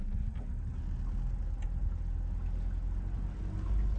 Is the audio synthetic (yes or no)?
no